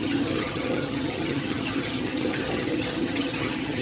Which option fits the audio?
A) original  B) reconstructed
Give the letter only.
B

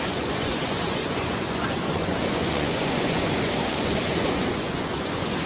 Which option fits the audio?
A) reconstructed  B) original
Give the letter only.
A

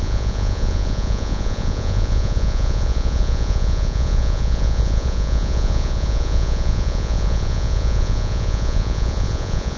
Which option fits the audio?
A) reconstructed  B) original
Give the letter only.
A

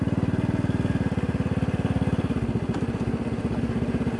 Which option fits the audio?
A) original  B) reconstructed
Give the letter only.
A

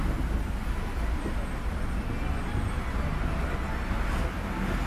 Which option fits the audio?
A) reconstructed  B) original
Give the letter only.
B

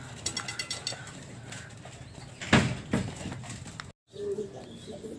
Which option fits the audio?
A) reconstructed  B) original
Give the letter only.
B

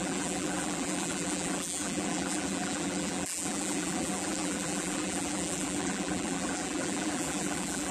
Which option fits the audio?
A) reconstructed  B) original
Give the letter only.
A